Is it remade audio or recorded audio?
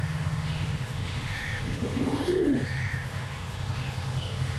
remade